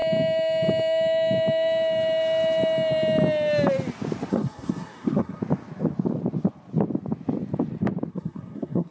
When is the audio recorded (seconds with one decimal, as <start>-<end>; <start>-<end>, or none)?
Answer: 0.0-4.3; 5.4-8.1